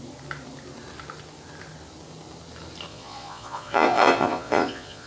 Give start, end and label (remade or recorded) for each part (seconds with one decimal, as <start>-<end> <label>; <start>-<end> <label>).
0.0-2.9 recorded; 2.9-5.1 remade